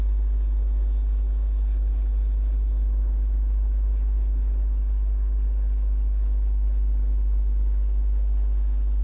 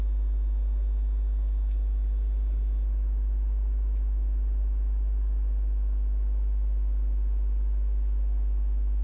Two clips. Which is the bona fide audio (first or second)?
second